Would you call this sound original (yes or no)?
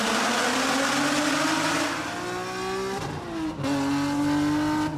yes